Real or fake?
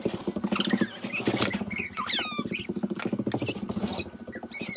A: real